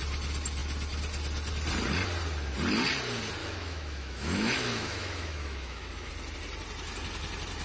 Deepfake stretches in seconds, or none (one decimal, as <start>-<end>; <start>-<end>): 3.4-6.1